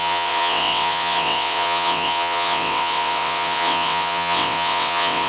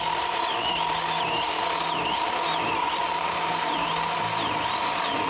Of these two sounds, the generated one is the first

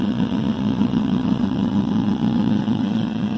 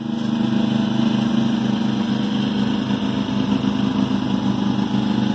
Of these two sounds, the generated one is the first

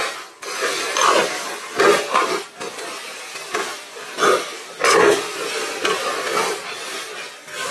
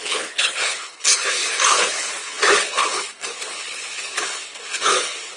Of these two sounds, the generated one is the second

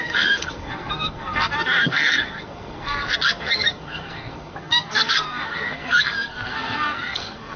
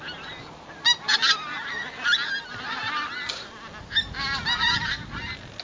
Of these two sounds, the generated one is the first